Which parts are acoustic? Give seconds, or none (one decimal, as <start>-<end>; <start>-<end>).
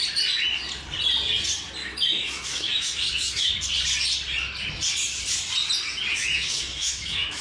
0.0-1.8; 3.5-6.1